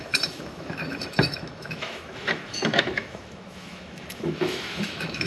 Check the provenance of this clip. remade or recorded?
remade